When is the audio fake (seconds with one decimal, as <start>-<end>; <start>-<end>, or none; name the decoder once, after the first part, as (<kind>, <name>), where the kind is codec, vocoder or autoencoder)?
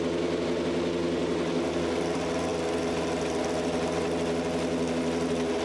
none